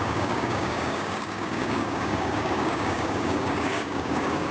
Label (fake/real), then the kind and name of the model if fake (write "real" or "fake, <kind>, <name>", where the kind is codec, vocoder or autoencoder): fake, codec, DAC